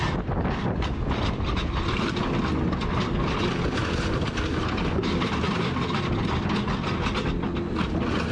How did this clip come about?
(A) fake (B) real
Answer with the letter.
B